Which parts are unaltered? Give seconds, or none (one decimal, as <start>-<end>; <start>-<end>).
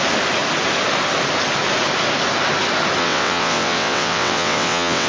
0.0-3.0